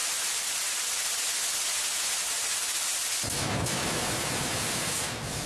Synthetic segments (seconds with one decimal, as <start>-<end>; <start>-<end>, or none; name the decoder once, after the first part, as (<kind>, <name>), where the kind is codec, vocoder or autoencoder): none

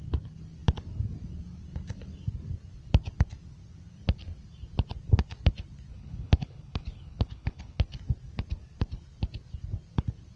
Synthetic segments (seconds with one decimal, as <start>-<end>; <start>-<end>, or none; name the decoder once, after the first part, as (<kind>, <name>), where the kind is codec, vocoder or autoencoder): 5.9-7.8 (codec, HILCodec)